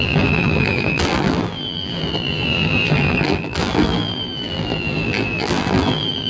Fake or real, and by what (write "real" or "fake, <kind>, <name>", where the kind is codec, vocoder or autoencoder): fake, vocoder, BigVGAN v2